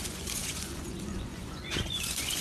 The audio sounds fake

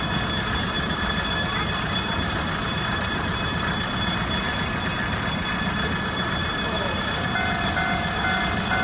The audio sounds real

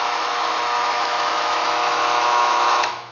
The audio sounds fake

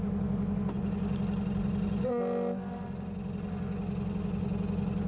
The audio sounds real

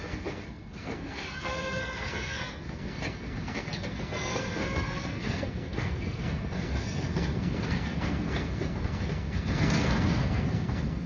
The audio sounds fake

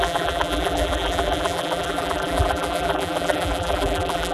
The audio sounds fake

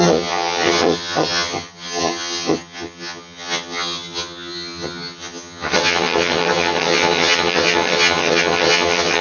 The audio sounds fake